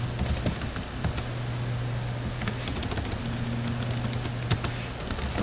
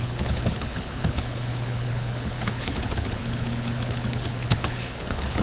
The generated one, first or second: second